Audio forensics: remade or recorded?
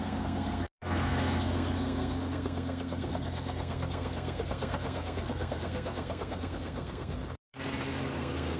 remade